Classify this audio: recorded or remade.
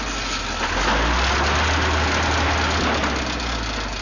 recorded